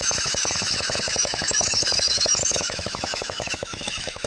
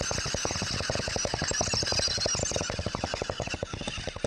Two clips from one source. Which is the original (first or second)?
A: second